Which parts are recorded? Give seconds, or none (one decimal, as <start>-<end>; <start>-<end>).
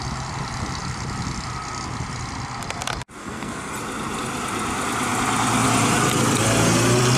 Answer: 0.0-3.2; 3.7-7.2